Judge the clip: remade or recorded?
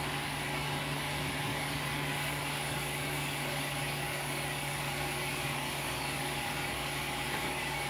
remade